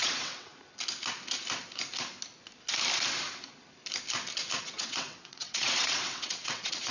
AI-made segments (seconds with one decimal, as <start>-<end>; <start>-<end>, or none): 0.0-0.5; 4.6-6.9